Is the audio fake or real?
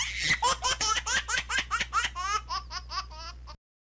real